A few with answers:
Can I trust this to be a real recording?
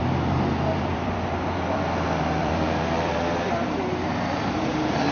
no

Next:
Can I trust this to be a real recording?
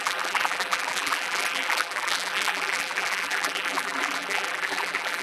no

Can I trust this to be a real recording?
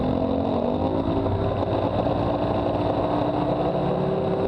yes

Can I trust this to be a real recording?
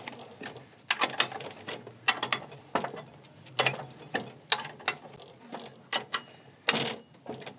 yes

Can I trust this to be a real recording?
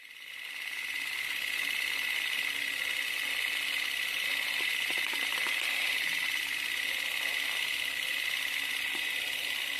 yes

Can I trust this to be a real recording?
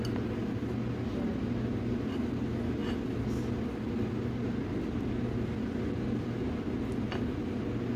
yes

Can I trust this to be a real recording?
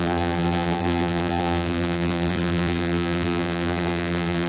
no